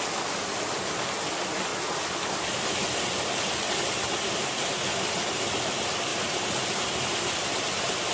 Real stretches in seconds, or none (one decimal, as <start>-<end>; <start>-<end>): 0.0-6.1